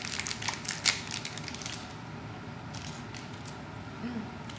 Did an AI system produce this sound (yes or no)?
no